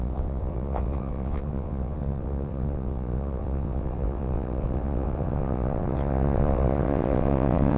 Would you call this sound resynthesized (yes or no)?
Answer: yes